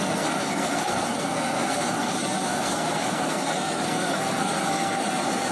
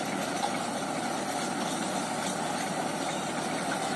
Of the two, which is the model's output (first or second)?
first